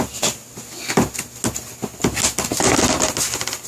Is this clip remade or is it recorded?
recorded